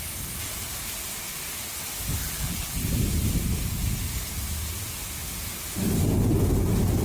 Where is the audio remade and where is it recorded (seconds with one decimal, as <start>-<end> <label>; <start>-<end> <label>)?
0.0-2.2 recorded; 2.2-3.0 remade; 3.0-7.0 recorded

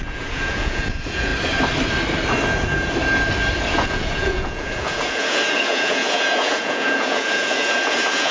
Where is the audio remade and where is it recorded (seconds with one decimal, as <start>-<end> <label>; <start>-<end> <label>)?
0.0-1.3 remade; 1.3-3.7 recorded; 3.7-8.3 remade

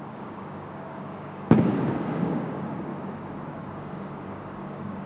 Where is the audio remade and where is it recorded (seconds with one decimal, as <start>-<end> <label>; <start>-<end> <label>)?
0.0-2.9 remade; 2.9-3.6 recorded; 3.6-5.1 remade

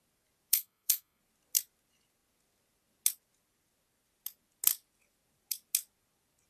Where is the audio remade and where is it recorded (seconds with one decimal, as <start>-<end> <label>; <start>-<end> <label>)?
0.0-0.5 recorded; 0.5-1.2 remade; 1.2-6.5 recorded

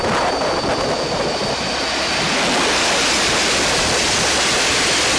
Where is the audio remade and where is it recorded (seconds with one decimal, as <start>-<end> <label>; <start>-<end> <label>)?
0.0-5.2 recorded